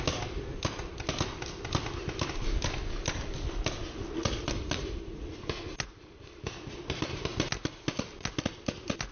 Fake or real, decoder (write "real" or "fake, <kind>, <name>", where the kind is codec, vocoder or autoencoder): real